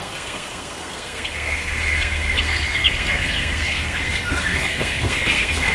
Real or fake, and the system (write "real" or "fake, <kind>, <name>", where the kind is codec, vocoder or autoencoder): fake, codec, SNAC